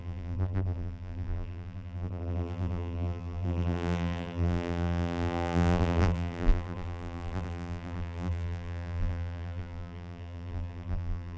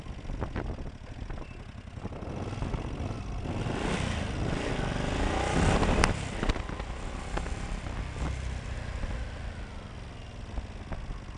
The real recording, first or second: second